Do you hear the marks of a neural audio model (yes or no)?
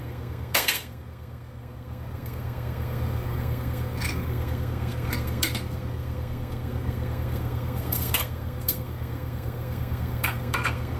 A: yes